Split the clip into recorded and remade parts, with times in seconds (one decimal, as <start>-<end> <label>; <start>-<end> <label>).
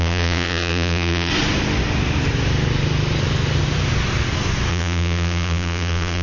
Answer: 0.0-1.3 remade; 1.3-4.7 recorded; 4.7-6.2 remade